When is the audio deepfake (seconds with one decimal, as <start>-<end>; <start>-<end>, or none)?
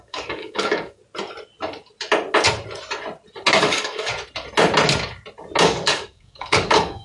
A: 0.0-1.0; 3.6-4.1; 5.6-7.0